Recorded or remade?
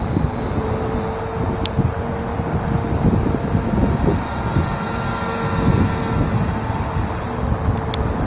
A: recorded